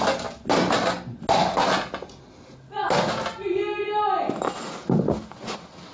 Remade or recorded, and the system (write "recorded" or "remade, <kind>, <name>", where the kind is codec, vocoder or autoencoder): recorded